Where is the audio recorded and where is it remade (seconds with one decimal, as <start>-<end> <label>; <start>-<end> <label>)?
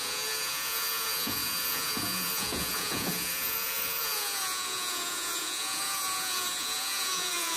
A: 0.0-7.6 remade